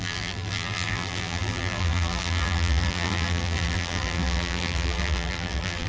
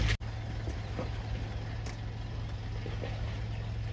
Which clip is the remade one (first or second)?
first